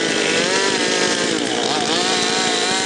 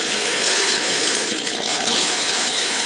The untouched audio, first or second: first